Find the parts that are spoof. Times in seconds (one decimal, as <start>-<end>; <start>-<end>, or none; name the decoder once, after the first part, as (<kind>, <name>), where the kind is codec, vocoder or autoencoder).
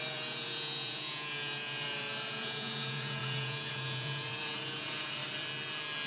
0.0-5.2 (vocoder, Vocos)